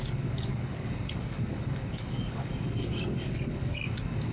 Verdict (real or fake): fake